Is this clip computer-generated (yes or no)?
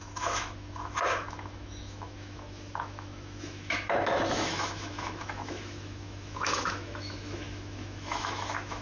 yes